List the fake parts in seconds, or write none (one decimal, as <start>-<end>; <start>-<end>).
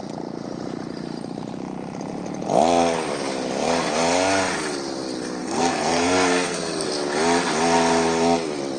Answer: 5.4-6.9